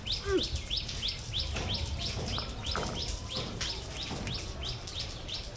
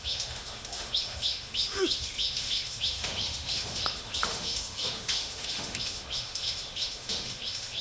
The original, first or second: first